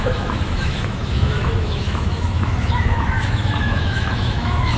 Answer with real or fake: fake